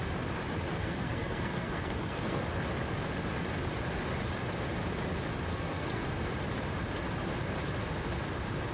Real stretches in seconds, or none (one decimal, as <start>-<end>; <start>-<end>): 0.0-0.8; 2.4-5.5; 6.1-8.7